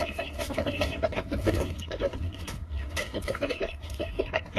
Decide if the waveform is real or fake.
fake